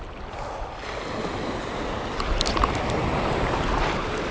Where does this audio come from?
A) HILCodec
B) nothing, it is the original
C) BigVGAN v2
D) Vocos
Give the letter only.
B